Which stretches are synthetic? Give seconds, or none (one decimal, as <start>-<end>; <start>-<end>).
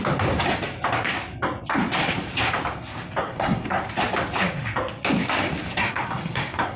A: 3.2-3.8; 5.8-6.8